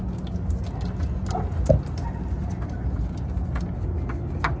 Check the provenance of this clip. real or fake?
real